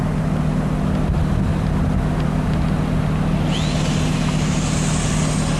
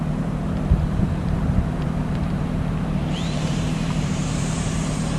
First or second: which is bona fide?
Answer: first